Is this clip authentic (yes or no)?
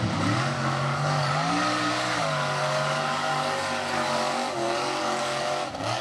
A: no